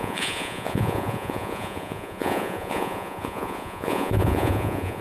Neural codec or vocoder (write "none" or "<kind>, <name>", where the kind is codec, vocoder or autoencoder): vocoder, Vocos